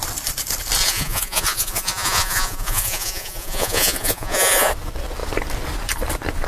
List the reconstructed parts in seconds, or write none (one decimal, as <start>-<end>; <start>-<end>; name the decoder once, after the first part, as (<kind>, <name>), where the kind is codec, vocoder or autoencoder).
0.8-4.7 (vocoder, Vocos)